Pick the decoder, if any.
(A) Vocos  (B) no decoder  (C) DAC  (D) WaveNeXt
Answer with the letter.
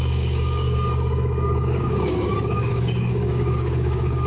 C